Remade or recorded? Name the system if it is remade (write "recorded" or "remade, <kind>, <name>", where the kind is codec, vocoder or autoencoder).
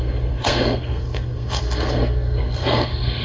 remade, codec, SNAC